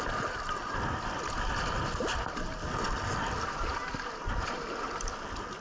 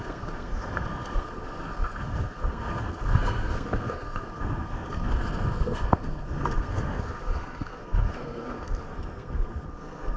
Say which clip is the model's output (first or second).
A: second